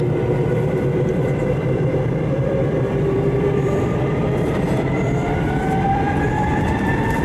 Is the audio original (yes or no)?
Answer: no